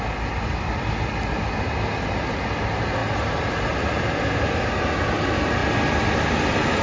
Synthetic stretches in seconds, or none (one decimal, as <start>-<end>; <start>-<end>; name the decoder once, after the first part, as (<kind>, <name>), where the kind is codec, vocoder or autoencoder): 0.5-1.1 (vocoder, BigVGAN v2)